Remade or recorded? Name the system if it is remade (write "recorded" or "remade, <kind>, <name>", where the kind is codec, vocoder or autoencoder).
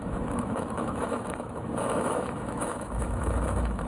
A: remade, autoencoder, DAC-VAE